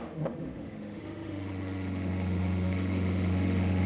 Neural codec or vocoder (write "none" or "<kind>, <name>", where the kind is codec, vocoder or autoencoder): autoencoder, DAC-VAE